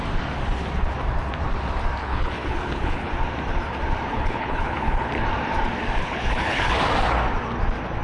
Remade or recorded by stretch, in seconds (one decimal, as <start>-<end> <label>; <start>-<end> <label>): 0.0-2.0 recorded; 2.0-3.1 remade; 3.1-4.1 recorded; 4.1-5.1 remade; 5.1-6.0 recorded; 6.0-6.7 remade; 6.7-8.0 recorded